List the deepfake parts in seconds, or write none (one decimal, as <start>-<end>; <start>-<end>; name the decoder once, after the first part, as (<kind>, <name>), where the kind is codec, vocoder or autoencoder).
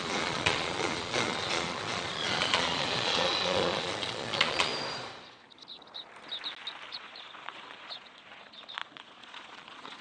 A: 0.0-4.7 (vocoder, Vocos); 6.9-10.0